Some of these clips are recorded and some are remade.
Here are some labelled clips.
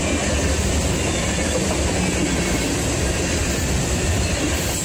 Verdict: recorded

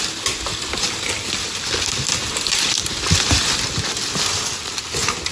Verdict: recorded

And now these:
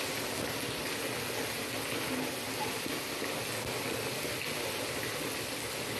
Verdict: recorded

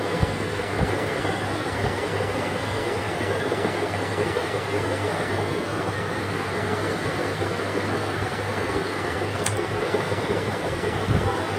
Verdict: remade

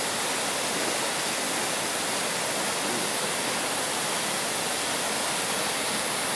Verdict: recorded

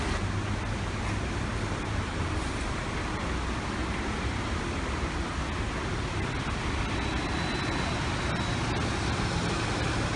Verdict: recorded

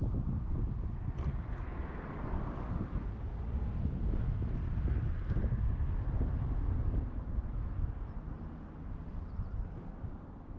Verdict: recorded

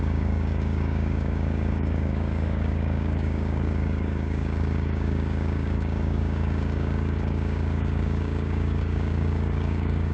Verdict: remade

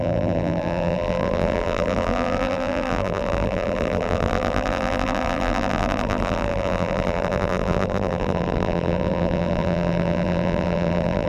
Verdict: remade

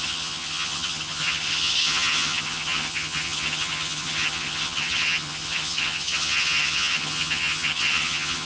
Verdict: remade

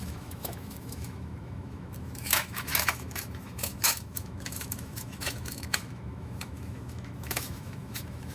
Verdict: remade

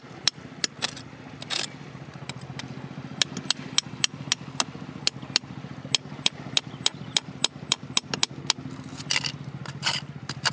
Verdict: recorded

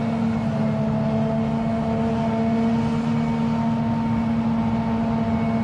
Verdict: recorded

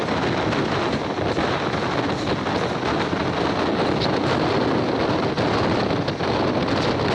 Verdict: recorded